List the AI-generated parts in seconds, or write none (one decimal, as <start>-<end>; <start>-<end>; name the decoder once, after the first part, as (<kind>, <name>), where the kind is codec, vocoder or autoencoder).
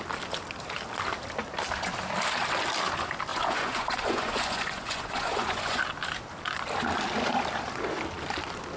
3.3-5.8 (vocoder, Vocos)